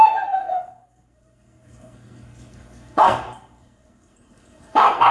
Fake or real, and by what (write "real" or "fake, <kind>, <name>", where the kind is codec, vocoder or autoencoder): fake, codec, SNAC